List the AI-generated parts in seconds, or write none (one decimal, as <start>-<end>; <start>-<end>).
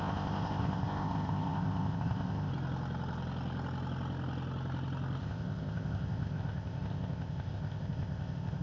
0.0-2.5; 5.2-8.6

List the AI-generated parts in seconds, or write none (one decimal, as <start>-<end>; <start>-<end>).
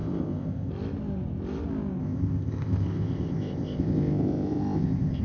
0.0-0.7; 2.0-5.2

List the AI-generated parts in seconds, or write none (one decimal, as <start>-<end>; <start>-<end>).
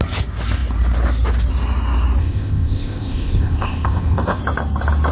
2.2-4.4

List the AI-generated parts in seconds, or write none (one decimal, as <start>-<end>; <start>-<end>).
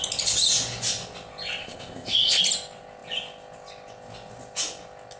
1.6-2.4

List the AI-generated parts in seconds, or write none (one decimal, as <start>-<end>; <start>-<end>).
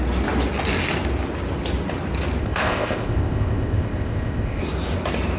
2.4-4.6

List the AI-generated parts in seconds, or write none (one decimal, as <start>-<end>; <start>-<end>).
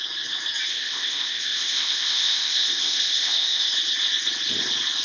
0.7-3.7